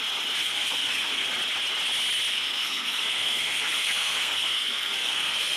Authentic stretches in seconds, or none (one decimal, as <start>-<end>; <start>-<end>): 0.0-0.4; 1.3-2.3